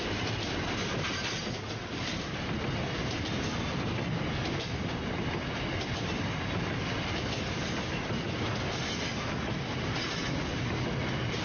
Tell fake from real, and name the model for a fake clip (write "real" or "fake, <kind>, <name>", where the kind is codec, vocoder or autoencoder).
real